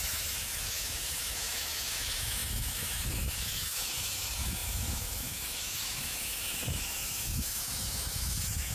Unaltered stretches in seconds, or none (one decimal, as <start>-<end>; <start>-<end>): none